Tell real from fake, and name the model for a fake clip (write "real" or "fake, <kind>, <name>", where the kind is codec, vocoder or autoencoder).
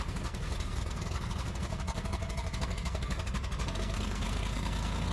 fake, codec, SNAC